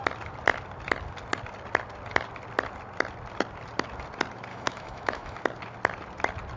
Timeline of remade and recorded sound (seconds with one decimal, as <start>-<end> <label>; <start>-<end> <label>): 0.0-4.5 recorded; 4.5-5.4 remade; 5.4-6.6 recorded